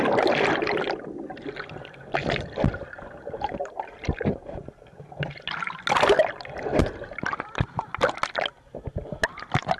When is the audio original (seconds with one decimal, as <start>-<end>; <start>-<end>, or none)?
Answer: 0.0-9.8